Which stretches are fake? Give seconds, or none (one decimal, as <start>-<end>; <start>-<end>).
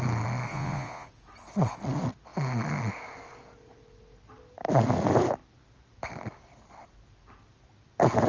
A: 0.5-1.1